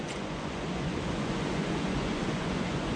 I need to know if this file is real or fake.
fake